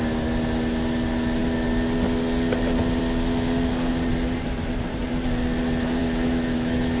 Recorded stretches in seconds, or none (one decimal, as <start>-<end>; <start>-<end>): 0.0-6.0